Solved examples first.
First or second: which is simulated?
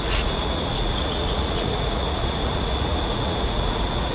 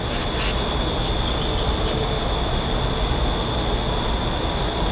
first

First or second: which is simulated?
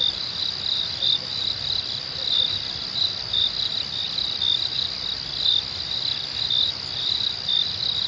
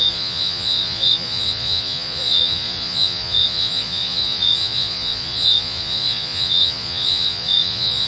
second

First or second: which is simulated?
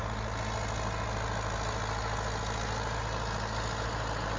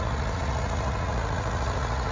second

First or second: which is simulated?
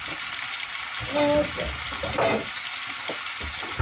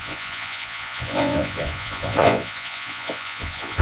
second